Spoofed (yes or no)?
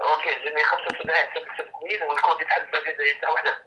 no